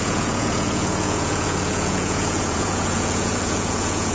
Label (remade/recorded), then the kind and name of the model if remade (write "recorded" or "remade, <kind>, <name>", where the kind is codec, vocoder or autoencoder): remade, vocoder, Vocos